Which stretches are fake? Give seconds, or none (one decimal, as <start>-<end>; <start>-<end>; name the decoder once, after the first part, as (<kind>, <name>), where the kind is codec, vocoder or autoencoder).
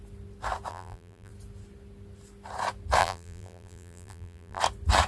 0.7-1.3 (vocoder, BigVGAN v2); 3.0-4.6